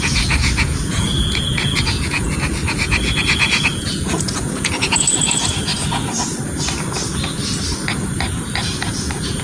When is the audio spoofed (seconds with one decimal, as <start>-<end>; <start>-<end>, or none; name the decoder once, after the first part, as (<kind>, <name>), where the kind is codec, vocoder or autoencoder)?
0.0-6.0 (vocoder, Vocos); 8.8-9.4